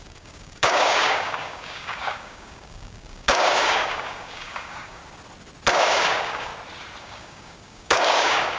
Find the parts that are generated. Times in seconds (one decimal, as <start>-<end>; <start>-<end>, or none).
0.0-5.0; 5.7-6.5; 7.0-8.6

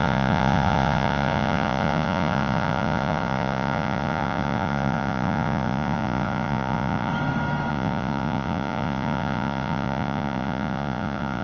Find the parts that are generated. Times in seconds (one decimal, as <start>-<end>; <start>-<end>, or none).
0.0-7.1; 7.7-11.4

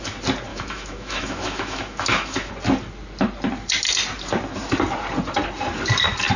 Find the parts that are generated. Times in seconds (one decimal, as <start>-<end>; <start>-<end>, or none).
0.5-2.5

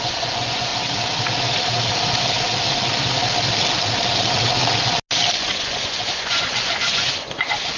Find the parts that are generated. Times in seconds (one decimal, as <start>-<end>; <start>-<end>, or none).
0.0-0.7; 5.4-7.8

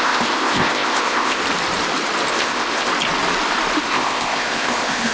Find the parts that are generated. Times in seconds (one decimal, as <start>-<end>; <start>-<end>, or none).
0.0-1.4; 2.3-2.9; 3.8-5.1

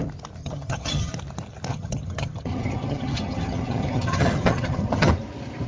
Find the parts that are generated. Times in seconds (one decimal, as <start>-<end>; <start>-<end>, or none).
0.4-1.1; 1.7-5.1

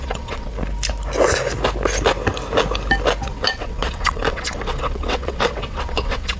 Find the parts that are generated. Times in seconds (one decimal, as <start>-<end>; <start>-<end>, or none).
0.0-0.5; 3.3-6.4

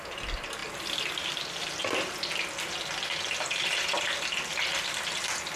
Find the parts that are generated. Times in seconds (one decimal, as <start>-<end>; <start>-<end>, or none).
none